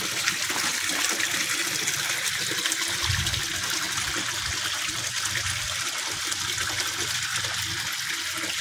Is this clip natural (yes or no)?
yes